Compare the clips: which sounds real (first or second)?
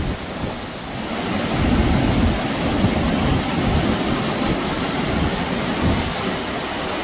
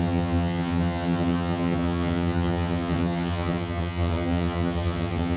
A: first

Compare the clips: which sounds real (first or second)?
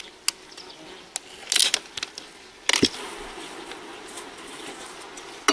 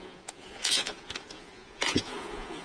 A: first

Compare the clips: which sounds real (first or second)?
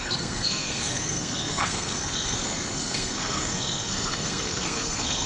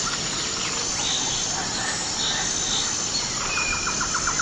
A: second